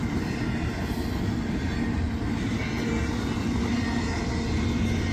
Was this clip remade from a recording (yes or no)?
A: no